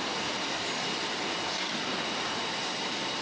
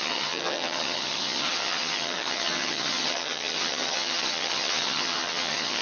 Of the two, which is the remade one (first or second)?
second